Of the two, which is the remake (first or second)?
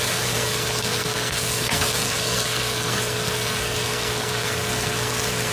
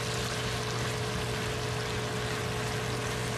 first